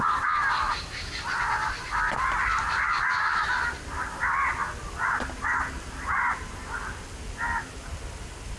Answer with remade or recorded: recorded